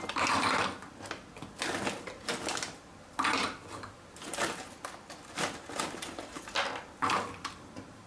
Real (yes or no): yes